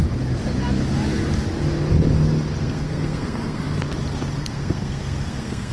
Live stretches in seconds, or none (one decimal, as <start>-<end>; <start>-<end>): 0.0-2.6; 3.6-4.4